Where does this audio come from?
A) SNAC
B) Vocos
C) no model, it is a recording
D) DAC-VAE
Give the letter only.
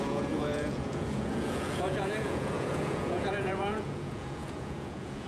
B